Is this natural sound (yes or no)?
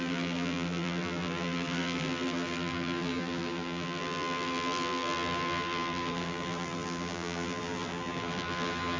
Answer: no